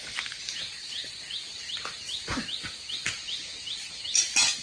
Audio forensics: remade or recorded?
recorded